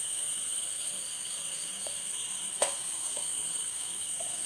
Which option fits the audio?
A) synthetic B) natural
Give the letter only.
A